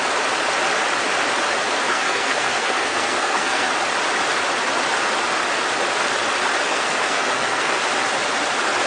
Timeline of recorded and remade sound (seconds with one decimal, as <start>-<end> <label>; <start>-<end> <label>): 0.0-1.9 recorded; 1.9-3.7 remade; 3.7-6.7 recorded; 6.7-7.8 remade; 7.8-8.9 recorded